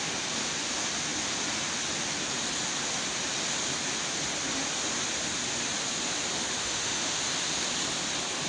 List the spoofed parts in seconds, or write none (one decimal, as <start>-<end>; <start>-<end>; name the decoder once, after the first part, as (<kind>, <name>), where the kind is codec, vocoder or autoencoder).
6.6-7.2 (autoencoder, DAC-VAE)